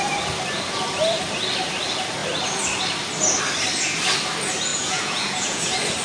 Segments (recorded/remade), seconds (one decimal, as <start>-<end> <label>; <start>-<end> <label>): 0.0-4.7 recorded; 4.7-5.6 remade; 5.6-6.0 recorded